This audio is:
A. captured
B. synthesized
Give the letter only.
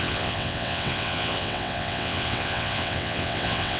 B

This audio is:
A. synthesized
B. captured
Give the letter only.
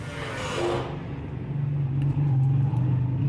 B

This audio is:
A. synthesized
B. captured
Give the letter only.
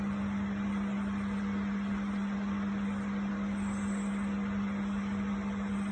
B